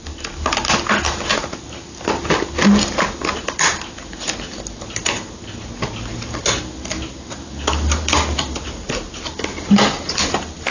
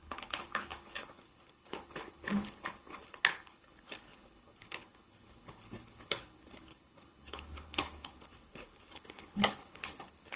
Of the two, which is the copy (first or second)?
second